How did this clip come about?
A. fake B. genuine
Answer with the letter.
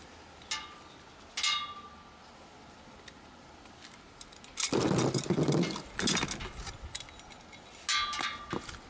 B